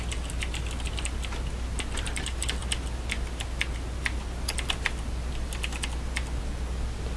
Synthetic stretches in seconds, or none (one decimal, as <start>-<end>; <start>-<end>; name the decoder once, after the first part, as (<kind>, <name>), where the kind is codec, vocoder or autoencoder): none